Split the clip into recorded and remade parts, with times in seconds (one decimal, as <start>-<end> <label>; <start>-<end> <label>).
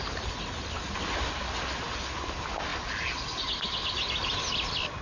0.0-5.0 recorded